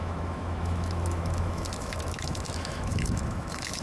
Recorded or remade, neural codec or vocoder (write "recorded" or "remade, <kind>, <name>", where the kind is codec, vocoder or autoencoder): remade, autoencoder, DAC-VAE